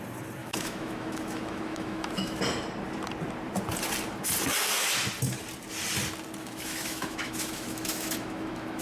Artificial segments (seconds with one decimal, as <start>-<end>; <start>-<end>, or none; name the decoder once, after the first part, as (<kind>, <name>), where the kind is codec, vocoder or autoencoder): 0.4-2.4 (autoencoder, DAC-VAE); 6.4-8.8